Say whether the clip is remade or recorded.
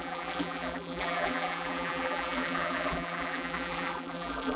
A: remade